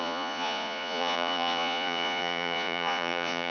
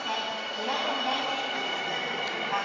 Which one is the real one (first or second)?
second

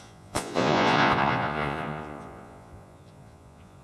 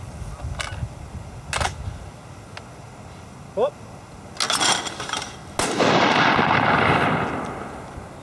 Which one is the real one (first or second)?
second